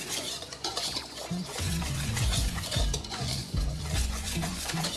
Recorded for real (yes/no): no